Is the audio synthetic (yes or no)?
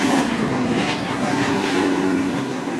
yes